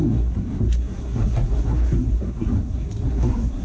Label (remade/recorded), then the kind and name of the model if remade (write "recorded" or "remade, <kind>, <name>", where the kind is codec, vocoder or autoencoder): remade, codec, SNAC